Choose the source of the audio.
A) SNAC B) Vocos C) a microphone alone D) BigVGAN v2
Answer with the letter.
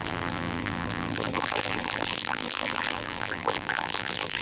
D